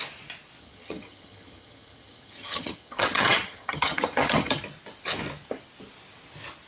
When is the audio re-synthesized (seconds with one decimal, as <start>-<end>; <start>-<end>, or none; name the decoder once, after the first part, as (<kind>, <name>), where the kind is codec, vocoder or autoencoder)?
0.6-4.6 (vocoder, HiFi-GAN)